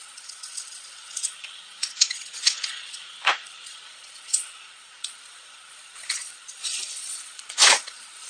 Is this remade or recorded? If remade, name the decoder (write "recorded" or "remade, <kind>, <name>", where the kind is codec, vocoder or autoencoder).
remade, vocoder, Vocos